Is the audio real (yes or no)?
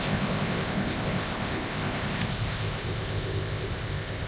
no